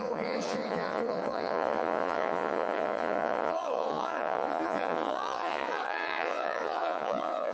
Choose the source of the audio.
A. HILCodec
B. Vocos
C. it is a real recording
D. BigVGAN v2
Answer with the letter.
B